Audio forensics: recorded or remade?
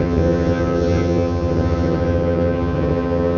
remade